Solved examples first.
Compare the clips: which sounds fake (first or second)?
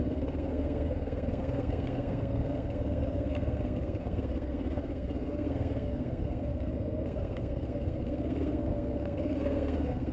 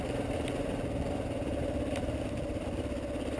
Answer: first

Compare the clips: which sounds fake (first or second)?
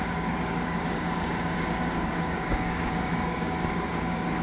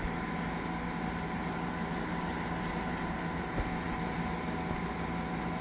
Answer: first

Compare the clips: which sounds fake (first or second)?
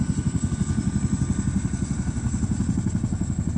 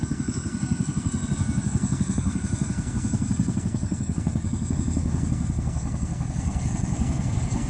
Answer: second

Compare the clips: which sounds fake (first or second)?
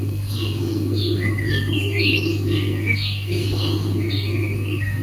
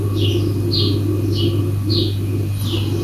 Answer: first